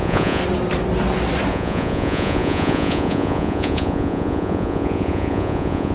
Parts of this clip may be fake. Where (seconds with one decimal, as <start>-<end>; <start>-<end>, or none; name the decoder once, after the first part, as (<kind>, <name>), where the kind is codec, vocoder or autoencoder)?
0.0-0.4 (vocoder, Vocos); 1.5-5.9